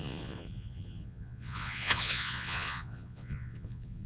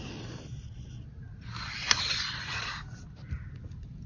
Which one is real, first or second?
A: second